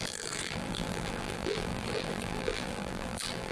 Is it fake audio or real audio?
fake